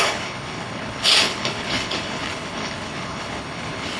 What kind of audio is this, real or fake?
fake